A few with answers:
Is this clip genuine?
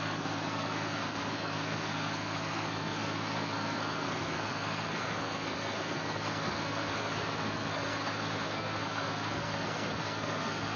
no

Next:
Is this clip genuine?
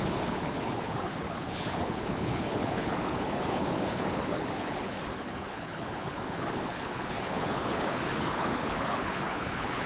no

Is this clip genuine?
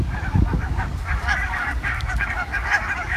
no